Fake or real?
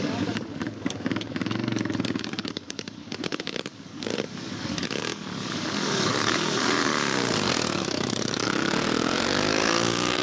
fake